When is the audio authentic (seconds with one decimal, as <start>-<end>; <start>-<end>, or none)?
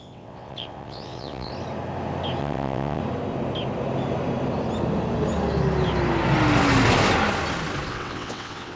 1.5-2.4; 3.0-7.9